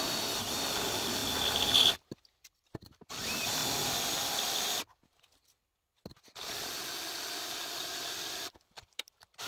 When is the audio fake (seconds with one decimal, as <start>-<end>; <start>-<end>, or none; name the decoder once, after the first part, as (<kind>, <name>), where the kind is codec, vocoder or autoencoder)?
0.0-1.2 (vocoder, BigVGAN v2); 2.0-3.6; 7.8-9.5